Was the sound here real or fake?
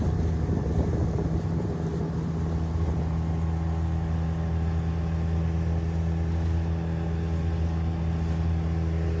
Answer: real